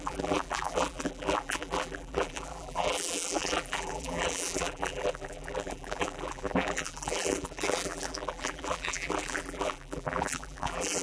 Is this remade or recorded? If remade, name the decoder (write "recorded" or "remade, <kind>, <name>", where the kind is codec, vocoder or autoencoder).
remade, vocoder, BigVGAN v2